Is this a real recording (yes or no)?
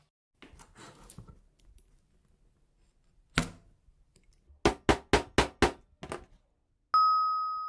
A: yes